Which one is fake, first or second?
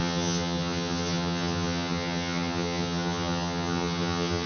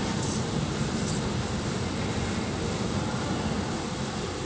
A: first